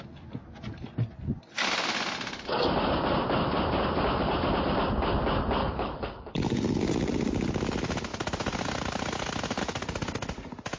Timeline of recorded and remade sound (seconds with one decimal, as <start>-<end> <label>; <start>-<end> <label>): 0.0-5.6 recorded; 5.6-6.8 remade; 6.8-10.8 recorded